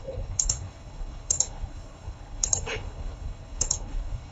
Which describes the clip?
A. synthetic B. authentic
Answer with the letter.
A